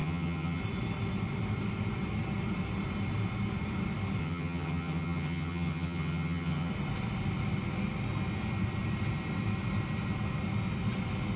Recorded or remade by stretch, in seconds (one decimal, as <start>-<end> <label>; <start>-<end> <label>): 0.0-0.6 remade; 0.6-4.2 recorded; 4.2-6.7 remade; 6.7-11.4 recorded